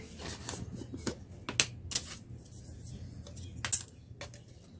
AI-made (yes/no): no